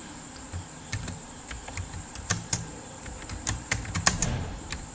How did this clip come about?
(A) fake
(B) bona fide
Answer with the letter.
A